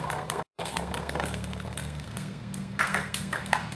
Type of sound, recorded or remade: remade